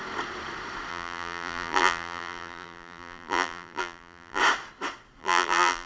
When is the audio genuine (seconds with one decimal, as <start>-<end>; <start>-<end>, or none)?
0.0-0.9; 4.4-5.2